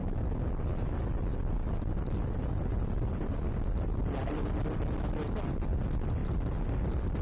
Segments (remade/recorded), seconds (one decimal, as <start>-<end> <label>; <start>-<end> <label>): 0.0-7.2 recorded